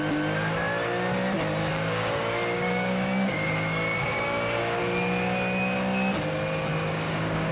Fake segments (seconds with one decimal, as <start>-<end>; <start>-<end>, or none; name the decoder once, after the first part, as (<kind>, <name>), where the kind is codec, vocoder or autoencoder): 1.6-4.8 (codec, DAC); 6.7-7.5